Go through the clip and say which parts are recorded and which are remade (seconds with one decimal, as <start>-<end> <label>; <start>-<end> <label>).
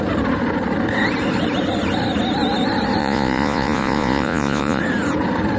0.0-3.0 recorded; 3.0-4.8 remade; 4.8-5.6 recorded